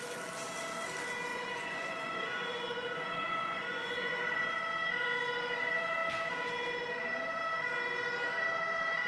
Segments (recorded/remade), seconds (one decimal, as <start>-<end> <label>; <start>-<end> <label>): 0.0-1.3 recorded; 1.3-4.2 remade; 4.2-9.1 recorded